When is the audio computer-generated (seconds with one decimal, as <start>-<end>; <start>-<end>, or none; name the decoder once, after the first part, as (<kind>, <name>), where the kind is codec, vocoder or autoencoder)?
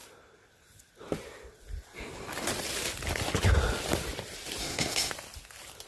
4.6-5.1 (codec, SNAC)